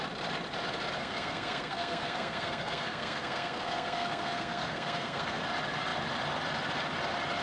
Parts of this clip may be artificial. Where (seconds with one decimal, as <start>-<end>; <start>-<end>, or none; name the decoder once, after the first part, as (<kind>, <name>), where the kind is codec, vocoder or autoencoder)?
1.0-5.4 (codec, SNAC)